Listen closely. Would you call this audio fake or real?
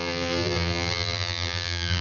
fake